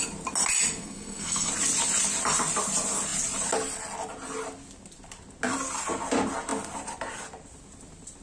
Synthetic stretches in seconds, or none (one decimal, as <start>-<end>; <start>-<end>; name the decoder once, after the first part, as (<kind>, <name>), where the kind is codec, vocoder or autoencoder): 0.8-1.5 (codec, SNAC)